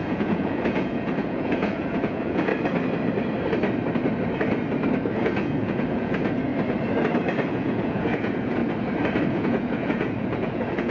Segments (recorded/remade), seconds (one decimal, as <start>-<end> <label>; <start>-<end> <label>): 0.0-2.5 remade; 2.5-5.1 recorded; 5.1-6.5 remade; 6.5-7.5 recorded; 7.5-8.6 remade; 8.6-9.3 recorded; 9.3-10.9 remade